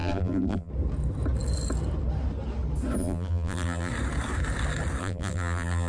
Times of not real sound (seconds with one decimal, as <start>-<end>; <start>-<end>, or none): 0.0-0.7; 3.0-3.9; 5.0-5.9